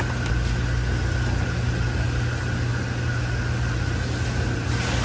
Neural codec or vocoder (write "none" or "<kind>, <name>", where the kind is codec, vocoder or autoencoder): none